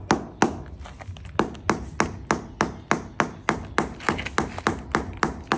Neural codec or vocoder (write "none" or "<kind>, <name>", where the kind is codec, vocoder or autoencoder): none